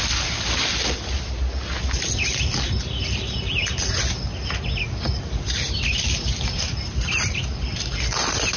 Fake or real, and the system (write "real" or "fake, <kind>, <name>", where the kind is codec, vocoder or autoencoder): real